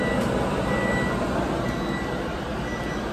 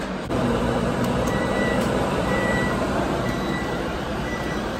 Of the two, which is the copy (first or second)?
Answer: second